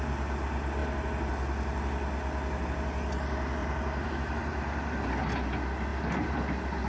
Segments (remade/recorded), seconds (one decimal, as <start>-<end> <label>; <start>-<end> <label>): 0.0-3.6 recorded; 3.6-4.5 remade; 4.5-6.9 recorded